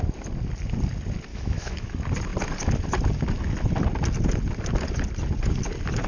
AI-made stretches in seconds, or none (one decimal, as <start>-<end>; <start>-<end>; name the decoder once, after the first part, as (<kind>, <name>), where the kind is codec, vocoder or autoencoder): 1.3-1.9 (autoencoder, DAC-VAE)